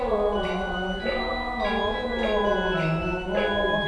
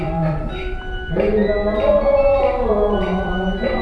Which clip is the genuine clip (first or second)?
first